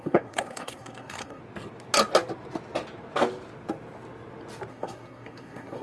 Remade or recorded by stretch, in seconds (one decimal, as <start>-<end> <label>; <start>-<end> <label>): 0.0-1.4 remade; 1.4-4.7 recorded; 4.7-5.8 remade

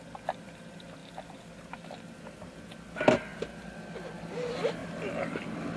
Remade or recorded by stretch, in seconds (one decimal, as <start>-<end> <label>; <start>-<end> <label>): 0.0-5.8 recorded

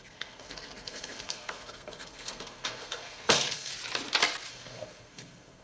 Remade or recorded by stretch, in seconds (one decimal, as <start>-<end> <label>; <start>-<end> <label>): 0.0-3.7 remade; 3.7-4.5 recorded; 4.5-5.6 remade

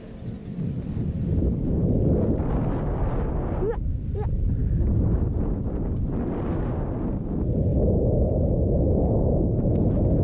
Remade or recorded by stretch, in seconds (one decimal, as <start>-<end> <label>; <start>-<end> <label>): 0.0-0.4 recorded; 0.4-2.4 remade; 2.4-7.7 recorded; 7.7-8.5 remade; 8.5-10.2 recorded

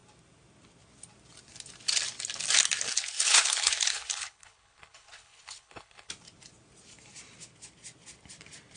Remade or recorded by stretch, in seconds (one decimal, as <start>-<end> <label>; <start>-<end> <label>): 0.0-2.9 recorded; 2.9-6.1 remade; 6.1-8.8 recorded

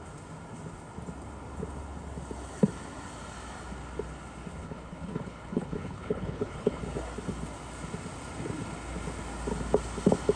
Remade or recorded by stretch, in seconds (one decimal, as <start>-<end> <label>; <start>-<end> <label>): 0.0-4.6 recorded; 4.6-6.8 remade; 6.8-10.4 recorded

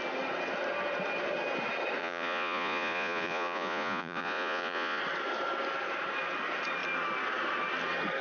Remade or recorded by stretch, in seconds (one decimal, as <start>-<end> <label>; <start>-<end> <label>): 0.0-2.0 recorded; 2.0-5.0 remade; 5.0-8.2 recorded